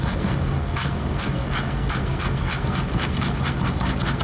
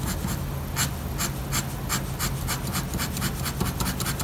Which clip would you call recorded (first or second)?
second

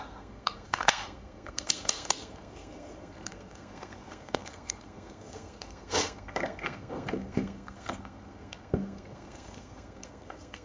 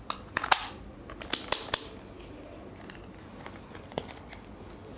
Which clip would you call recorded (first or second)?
second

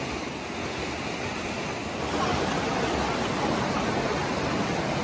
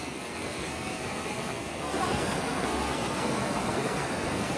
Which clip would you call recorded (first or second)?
first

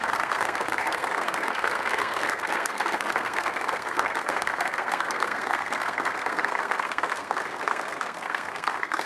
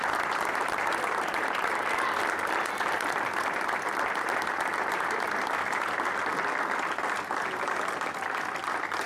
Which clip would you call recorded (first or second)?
second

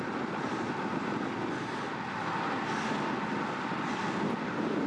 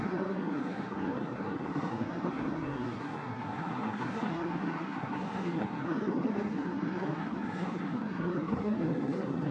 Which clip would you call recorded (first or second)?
first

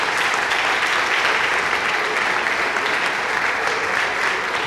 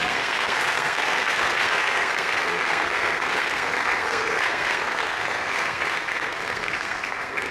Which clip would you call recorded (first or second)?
first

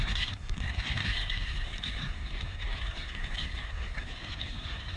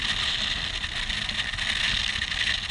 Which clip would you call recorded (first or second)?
second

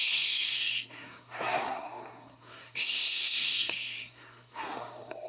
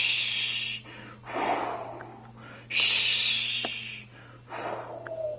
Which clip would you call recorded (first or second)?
second